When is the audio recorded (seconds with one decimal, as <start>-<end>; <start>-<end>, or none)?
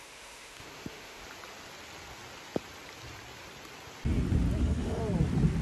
1.2-4.6; 5.0-5.6